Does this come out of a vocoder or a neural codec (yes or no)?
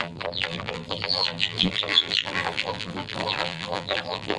yes